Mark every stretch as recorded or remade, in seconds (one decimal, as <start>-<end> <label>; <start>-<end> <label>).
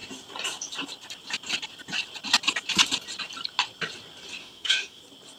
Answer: 0.0-4.4 recorded; 4.4-5.0 remade; 5.0-5.4 recorded